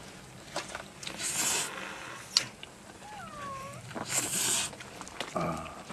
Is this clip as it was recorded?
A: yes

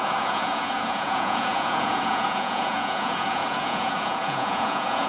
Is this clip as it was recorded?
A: no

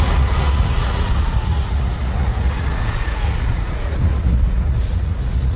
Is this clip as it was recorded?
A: no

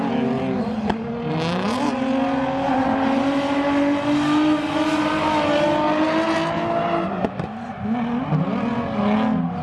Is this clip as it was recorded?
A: yes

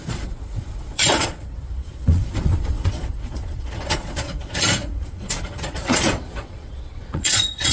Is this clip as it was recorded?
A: no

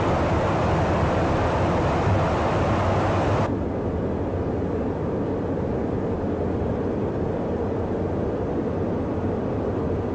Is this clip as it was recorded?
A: yes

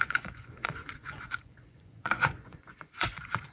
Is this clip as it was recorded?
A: no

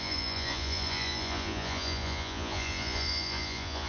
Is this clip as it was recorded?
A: no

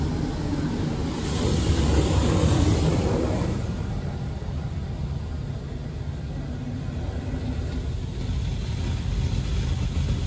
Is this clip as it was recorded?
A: yes